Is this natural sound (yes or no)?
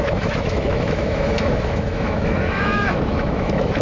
no